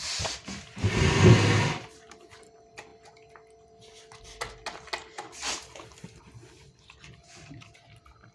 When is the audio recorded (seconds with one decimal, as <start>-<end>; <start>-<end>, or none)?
0.0-8.3